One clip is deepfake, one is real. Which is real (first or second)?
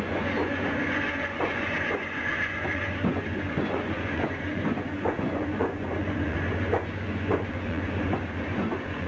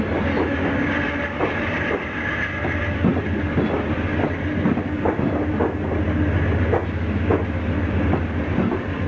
second